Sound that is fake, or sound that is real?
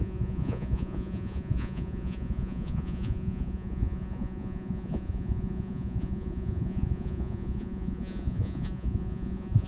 fake